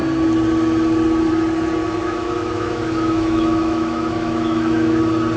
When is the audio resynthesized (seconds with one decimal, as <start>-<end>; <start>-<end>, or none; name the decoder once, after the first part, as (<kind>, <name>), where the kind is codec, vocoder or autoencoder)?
1.8-5.0 (autoencoder, DAC-VAE)

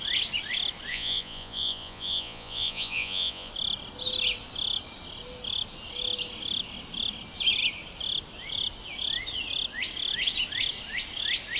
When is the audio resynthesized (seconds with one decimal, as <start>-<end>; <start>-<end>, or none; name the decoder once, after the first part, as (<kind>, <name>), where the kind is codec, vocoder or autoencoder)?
0.9-3.5 (vocoder, Vocos)

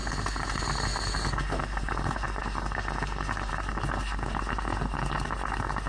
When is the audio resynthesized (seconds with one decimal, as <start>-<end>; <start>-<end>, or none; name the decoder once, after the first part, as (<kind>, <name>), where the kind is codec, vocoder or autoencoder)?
none

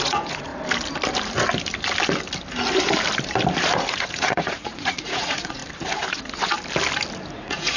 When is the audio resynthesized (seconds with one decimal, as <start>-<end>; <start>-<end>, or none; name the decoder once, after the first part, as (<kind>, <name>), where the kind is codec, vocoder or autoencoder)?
0.0-0.5 (vocoder, Vocos); 3.9-5.6; 7.3-7.8

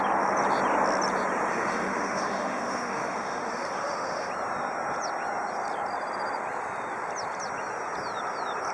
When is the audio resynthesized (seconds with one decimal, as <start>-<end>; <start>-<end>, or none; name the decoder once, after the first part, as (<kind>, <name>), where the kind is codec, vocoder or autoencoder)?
1.5-4.3 (autoencoder, DAC-VAE)

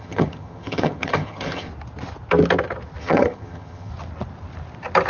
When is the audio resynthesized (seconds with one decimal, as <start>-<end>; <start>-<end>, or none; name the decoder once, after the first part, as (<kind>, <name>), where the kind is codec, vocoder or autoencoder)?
0.0-1.7 (vocoder, HiFi-GAN); 3.0-3.9

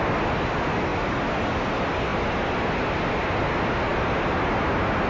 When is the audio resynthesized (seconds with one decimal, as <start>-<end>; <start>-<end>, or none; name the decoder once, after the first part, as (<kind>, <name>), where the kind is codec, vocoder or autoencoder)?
none

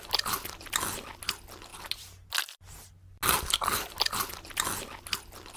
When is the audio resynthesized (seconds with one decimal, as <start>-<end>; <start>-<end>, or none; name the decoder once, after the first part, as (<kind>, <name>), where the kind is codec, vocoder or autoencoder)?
none